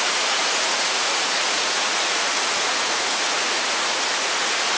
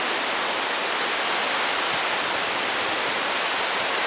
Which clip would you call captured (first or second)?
second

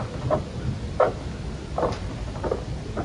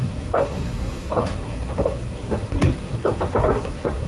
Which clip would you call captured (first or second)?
first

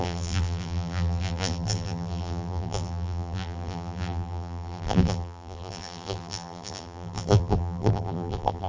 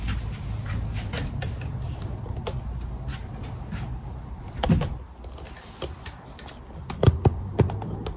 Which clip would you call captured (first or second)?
second